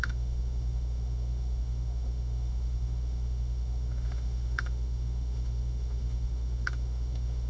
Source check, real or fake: fake